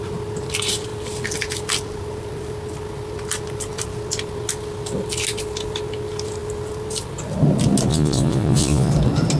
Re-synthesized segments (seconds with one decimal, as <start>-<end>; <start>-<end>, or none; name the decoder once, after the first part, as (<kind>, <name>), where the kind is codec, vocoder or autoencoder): 7.9-8.9 (vocoder, Vocos)